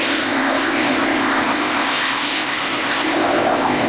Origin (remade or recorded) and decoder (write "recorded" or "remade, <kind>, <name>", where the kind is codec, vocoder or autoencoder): remade, codec, ZipCodec